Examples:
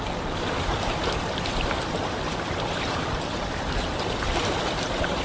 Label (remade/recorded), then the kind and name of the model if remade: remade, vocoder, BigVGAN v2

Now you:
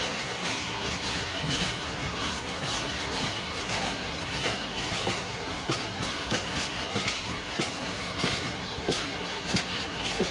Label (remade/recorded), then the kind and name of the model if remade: remade, codec, SNAC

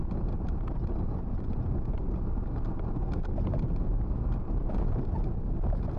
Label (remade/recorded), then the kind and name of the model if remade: recorded